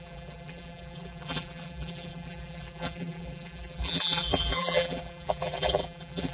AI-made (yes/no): yes